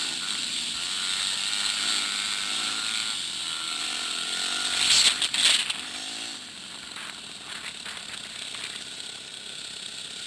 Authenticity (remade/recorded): recorded